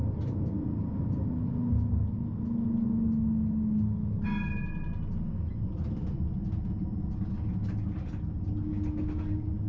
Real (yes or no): yes